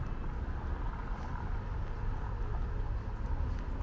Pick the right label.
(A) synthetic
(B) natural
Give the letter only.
B